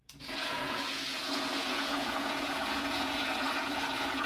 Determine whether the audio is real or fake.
fake